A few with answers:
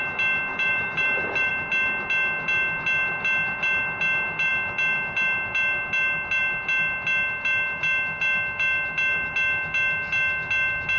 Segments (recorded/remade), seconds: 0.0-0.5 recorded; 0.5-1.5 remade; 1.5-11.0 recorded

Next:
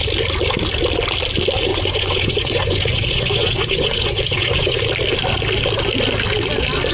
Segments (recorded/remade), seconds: 0.0-1.7 recorded; 1.7-4.8 remade; 4.8-6.9 recorded

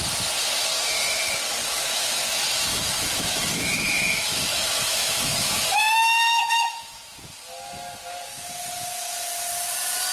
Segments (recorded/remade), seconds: 0.0-1.6 recorded; 1.6-2.1 remade; 2.1-2.7 recorded; 2.7-7.0 remade; 7.0-10.1 recorded

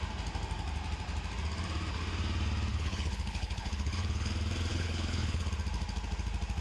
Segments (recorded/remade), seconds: 0.0-2.7 recorded; 2.7-4.3 remade; 4.3-4.7 recorded; 4.7-5.5 remade; 5.5-6.6 recorded

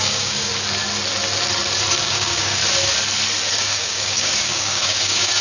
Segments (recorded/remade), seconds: 0.0-0.5 remade; 0.5-2.0 recorded; 2.0-2.6 remade; 2.6-3.5 recorded; 3.5-5.4 remade

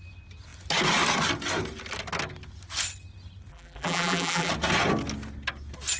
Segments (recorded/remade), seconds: 0.0-3.5 recorded; 3.5-4.5 remade; 4.5-6.0 recorded